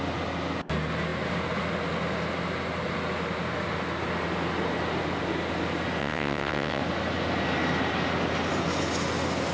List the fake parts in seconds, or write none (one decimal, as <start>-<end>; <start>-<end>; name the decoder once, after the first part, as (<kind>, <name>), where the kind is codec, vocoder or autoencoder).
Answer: 6.0-6.8 (vocoder, WaveNeXt)